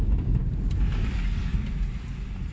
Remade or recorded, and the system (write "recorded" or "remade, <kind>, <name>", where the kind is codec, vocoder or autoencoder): recorded